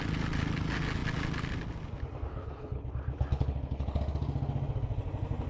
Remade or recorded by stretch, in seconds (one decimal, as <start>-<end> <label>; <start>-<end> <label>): 0.0-2.3 recorded; 2.3-2.9 remade; 2.9-3.3 recorded; 3.3-4.0 remade; 4.0-5.5 recorded